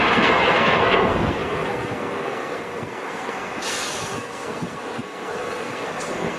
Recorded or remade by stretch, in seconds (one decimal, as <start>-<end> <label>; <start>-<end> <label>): 0.0-6.4 remade